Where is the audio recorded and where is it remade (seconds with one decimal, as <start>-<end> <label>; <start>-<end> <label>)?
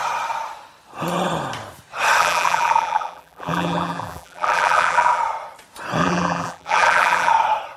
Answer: 0.0-2.2 recorded; 2.2-5.2 remade; 5.2-6.0 recorded; 6.0-7.3 remade; 7.3-7.8 recorded